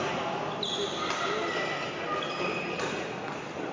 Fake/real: real